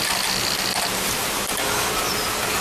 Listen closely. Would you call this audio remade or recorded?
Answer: recorded